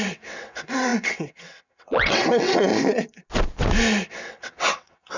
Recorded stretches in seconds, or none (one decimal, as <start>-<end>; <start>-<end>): 2.7-4.1